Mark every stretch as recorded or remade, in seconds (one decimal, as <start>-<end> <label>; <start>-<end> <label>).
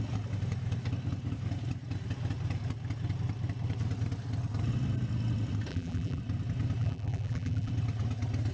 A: 0.0-5.7 recorded; 5.7-6.2 remade; 6.2-6.8 recorded; 6.8-7.7 remade; 7.7-8.5 recorded